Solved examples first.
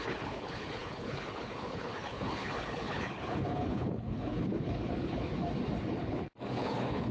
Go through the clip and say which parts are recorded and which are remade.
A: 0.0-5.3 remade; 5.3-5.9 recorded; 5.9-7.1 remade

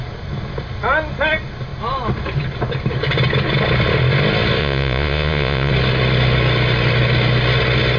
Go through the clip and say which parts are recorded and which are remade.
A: 0.0-4.6 recorded; 4.6-5.7 remade; 5.7-8.0 recorded